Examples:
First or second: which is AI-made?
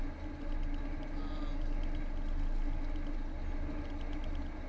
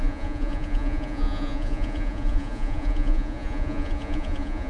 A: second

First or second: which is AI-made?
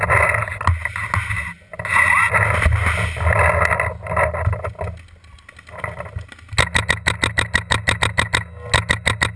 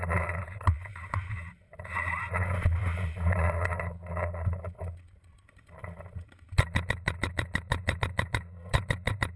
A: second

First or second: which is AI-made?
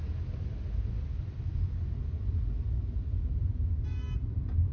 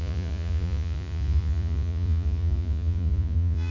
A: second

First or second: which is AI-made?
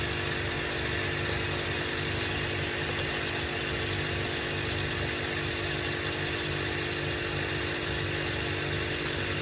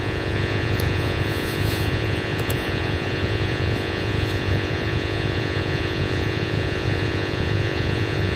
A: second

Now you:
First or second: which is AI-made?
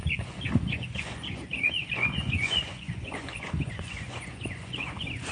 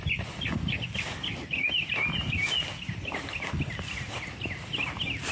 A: first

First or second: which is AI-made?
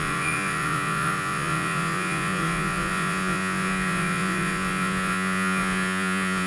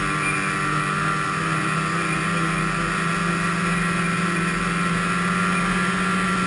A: first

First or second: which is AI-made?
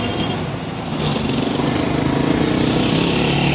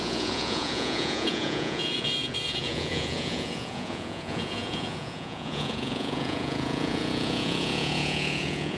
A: second